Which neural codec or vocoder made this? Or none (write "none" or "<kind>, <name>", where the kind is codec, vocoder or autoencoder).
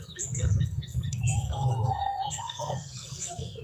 codec, SNAC